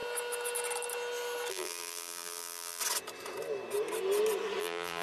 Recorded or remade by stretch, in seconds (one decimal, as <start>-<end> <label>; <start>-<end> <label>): 0.0-1.5 recorded; 1.5-2.8 remade; 2.8-4.6 recorded; 4.6-5.0 remade